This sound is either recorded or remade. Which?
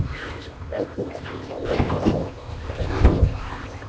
remade